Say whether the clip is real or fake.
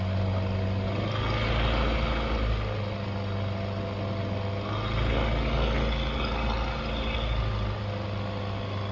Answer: real